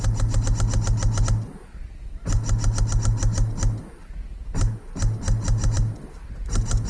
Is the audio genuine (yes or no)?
yes